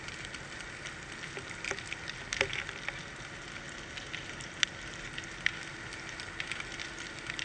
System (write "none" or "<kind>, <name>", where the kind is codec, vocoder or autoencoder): none